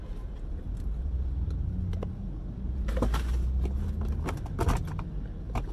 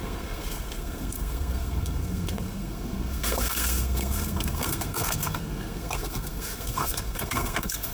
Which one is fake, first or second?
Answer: second